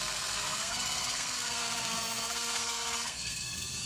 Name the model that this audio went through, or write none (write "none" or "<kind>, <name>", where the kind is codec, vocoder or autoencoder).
codec, SNAC